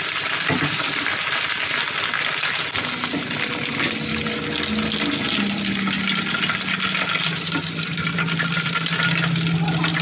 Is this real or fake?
real